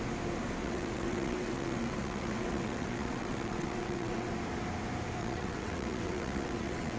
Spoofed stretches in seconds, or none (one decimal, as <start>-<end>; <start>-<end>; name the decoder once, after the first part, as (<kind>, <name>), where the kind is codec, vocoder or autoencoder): 0.6-4.3 (vocoder, WaveNeXt); 5.2-7.0